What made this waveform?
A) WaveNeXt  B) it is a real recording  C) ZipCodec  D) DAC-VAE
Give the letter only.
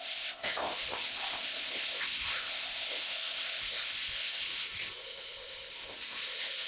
C